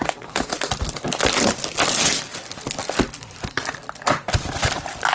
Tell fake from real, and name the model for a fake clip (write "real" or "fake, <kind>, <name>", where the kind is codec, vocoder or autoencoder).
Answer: real